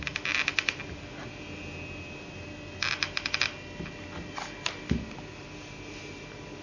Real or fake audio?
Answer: real